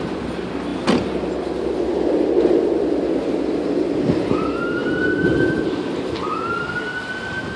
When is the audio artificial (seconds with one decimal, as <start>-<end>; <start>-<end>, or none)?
none